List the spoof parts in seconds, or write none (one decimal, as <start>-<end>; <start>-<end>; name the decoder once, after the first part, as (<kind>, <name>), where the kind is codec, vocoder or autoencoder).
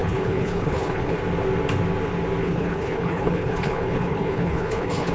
0.0-1.2 (codec, HILCodec); 2.4-5.1